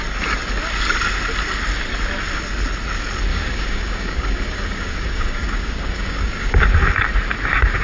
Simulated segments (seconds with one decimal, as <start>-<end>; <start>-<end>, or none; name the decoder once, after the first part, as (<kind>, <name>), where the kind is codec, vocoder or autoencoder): 3.3-6.6 (codec, DAC)